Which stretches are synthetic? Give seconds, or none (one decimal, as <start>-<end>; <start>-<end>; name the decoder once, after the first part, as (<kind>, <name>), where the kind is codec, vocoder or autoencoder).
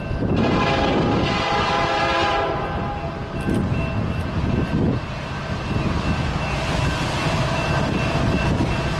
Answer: none